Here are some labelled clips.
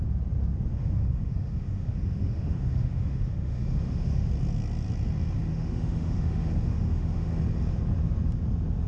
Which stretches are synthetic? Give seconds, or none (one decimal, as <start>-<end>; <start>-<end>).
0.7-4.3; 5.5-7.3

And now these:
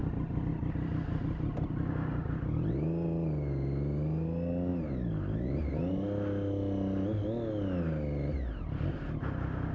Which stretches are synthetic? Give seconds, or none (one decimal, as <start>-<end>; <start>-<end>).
none

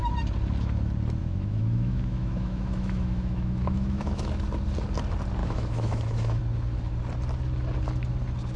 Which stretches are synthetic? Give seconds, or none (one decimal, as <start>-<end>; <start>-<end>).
1.2-4.3; 5.4-6.4

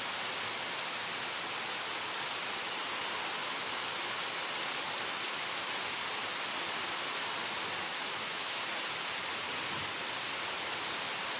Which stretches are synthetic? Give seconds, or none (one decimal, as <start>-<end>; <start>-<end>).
7.9-8.7

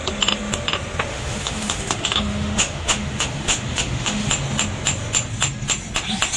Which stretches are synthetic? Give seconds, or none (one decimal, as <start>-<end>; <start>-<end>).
1.1-4.3

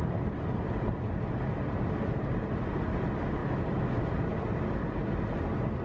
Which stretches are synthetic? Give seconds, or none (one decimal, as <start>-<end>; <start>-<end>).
3.4-3.9

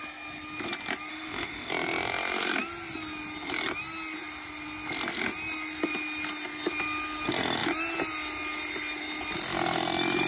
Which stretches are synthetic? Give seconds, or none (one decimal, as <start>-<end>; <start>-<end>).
1.1-1.7